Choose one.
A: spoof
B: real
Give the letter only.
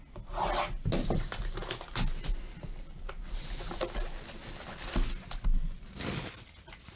B